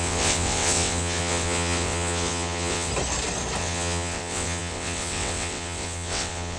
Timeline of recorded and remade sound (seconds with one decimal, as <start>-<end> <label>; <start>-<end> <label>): 0.0-2.9 remade; 2.9-3.6 recorded; 3.6-6.6 remade

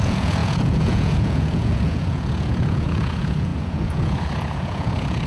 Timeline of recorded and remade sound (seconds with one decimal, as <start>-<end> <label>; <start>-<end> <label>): 0.0-5.3 remade

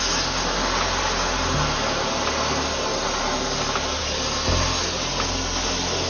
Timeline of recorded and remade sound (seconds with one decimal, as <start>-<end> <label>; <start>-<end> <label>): 0.0-6.1 recorded